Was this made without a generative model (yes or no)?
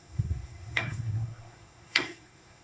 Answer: no